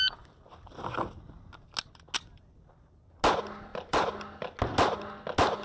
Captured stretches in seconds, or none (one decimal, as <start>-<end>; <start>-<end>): 0.0-3.7; 4.6-5.6